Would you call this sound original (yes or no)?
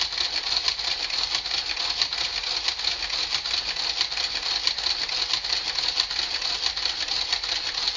yes